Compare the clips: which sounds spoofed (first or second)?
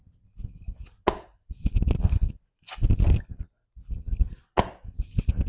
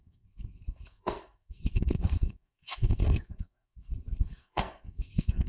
second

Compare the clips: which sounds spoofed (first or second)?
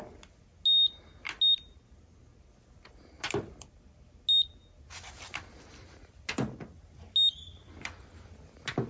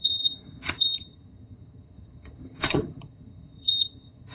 second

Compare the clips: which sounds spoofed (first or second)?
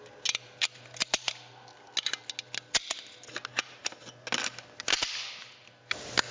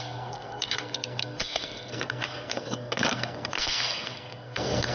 second